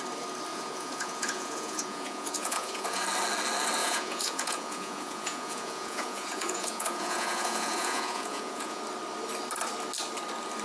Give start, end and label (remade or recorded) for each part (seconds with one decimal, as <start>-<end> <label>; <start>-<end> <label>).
0.0-0.5 recorded; 0.5-3.0 remade; 3.0-3.8 recorded; 3.8-8.8 remade; 8.8-10.6 recorded